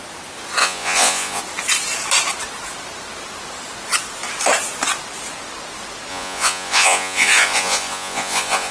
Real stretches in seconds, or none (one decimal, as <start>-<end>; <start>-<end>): 0.0-0.6; 1.4-6.1